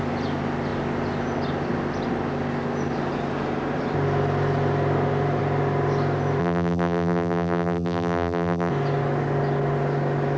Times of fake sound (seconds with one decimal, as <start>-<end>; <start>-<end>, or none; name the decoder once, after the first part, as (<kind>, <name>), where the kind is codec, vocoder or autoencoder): 6.4-8.7 (vocoder, BigVGAN v2)